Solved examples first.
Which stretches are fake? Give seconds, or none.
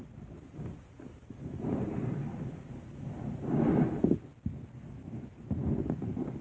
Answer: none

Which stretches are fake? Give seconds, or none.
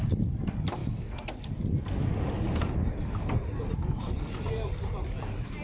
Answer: none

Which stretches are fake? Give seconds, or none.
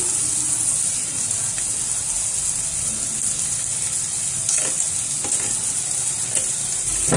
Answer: none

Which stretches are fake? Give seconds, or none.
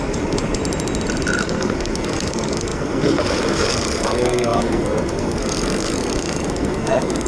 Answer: 0.0-0.6; 1.4-7.3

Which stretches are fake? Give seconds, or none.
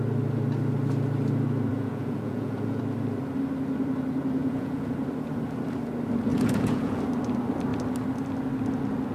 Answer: 1.7-2.8; 4.4-4.9; 6.3-7.0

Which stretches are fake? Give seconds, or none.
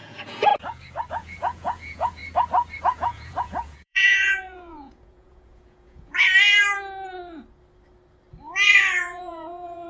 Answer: 0.0-0.5; 1.1-2.2; 2.8-6.1; 9.0-9.9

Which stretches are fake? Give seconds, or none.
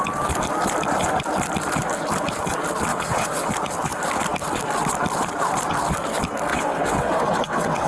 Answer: 2.9-3.5; 6.5-7.9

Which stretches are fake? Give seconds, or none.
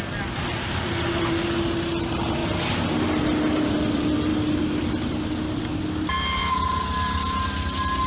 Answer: none